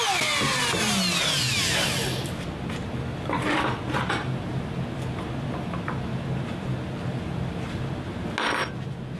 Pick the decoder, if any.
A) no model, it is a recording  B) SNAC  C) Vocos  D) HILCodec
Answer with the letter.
A